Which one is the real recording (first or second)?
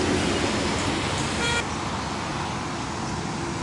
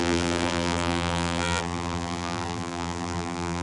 first